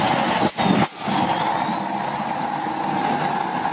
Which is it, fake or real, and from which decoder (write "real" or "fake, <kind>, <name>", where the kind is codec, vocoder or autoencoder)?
real